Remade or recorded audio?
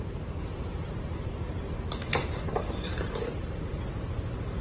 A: remade